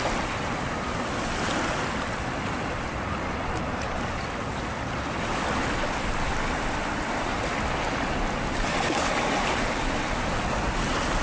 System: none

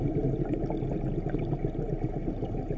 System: none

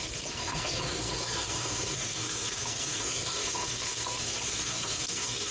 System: codec, SNAC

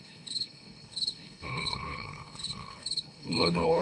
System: codec, HILCodec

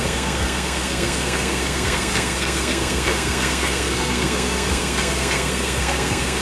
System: codec, SNAC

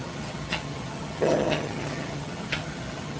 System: vocoder, HiFi-GAN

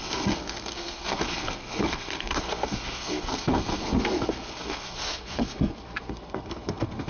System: codec, SNAC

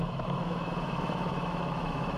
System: autoencoder, DAC-VAE